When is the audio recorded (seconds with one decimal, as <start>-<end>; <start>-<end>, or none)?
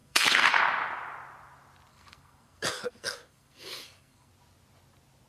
0.6-1.9; 4.3-5.3